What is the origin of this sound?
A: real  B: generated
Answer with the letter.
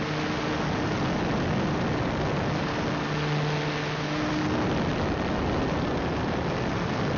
A